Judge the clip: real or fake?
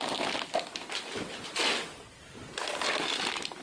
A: real